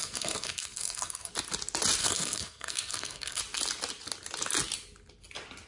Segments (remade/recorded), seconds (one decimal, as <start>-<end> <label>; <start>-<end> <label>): 0.0-1.3 remade; 1.3-2.0 recorded; 2.0-3.4 remade; 3.4-5.7 recorded